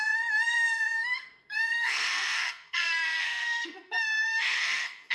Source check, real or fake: fake